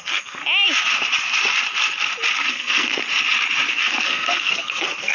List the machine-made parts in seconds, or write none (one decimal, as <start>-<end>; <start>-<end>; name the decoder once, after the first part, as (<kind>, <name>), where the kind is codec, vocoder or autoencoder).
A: 0.0-0.4 (codec, SNAC); 2.5-3.0; 3.7-5.1